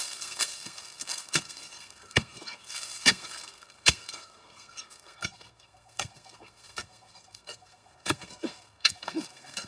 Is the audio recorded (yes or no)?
no